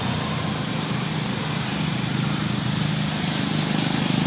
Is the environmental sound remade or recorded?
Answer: recorded